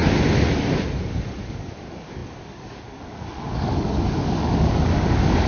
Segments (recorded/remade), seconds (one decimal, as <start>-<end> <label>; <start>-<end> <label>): 0.0-1.4 recorded; 1.4-5.5 remade